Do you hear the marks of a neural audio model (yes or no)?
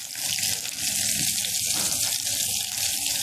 no